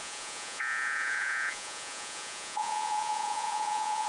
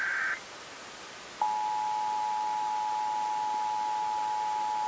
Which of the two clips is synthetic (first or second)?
first